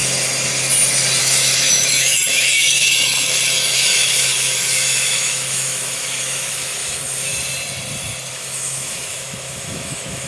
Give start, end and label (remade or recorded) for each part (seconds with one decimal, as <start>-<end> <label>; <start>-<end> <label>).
0.0-1.2 recorded; 1.2-7.3 remade; 7.3-8.3 recorded; 8.3-10.3 remade